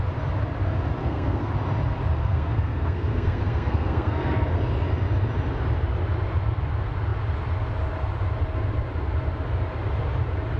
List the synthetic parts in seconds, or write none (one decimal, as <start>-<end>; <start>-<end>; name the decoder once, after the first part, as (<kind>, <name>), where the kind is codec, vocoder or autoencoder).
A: 1.0-1.5 (codec, SNAC); 2.2-4.6